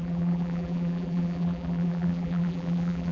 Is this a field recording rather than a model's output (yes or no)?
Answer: no